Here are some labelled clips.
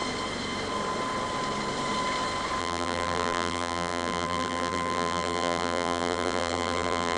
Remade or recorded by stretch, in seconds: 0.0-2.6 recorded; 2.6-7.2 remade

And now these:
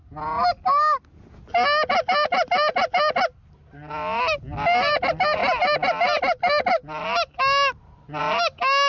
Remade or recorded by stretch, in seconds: 0.0-8.9 recorded

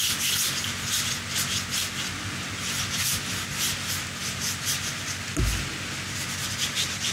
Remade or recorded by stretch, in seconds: 0.0-7.1 recorded